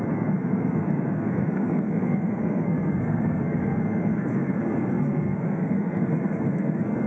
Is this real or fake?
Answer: fake